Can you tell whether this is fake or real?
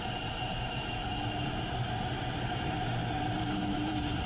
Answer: fake